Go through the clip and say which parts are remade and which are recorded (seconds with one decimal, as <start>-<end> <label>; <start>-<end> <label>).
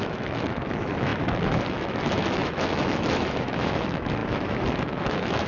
0.0-5.5 remade